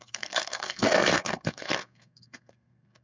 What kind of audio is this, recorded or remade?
remade